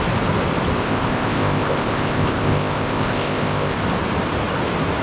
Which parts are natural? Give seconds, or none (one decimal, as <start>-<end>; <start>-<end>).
0.0-0.8; 3.8-5.0